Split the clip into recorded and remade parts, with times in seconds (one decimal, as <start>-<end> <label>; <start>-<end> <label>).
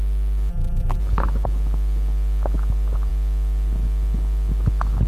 0.0-0.5 recorded; 0.5-1.0 remade; 1.0-5.1 recorded